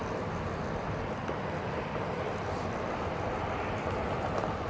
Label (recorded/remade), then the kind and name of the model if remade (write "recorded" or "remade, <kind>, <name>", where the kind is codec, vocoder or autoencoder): recorded